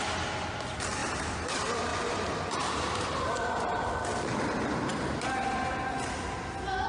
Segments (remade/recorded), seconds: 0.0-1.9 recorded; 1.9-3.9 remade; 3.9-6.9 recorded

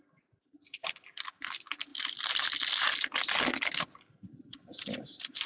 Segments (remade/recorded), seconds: 0.0-5.5 recorded

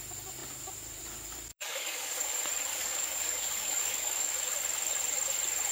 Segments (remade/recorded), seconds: 0.0-1.5 recorded; 1.5-2.3 remade; 2.3-2.7 recorded; 2.7-4.3 remade; 4.3-5.7 recorded

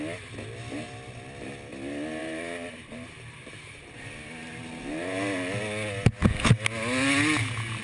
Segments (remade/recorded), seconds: 0.0-2.2 recorded; 2.2-4.7 remade; 4.7-7.8 recorded

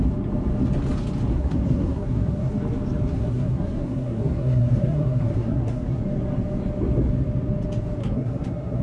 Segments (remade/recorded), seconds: 0.0-1.3 recorded; 1.3-2.5 remade; 2.5-3.1 recorded; 3.1-6.0 remade; 6.0-8.0 recorded; 8.0-8.8 remade

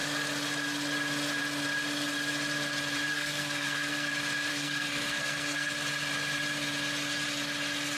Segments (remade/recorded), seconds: 0.0-3.1 recorded; 3.1-4.1 remade; 4.1-4.5 recorded; 4.5-5.7 remade; 5.7-8.0 recorded

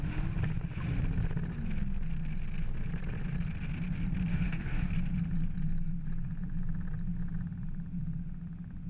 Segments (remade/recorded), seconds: 0.0-4.3 recorded; 4.3-4.9 remade; 4.9-8.9 recorded

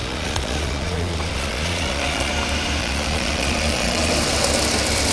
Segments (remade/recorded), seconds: 0.0-2.3 remade; 2.3-2.8 recorded; 2.8-4.1 remade; 4.1-5.1 recorded